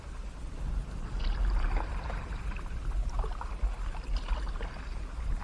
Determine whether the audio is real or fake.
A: real